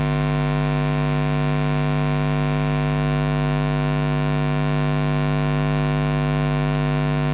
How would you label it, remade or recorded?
recorded